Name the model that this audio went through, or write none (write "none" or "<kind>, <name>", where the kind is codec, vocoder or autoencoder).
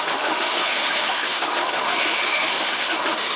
autoencoder, DAC-VAE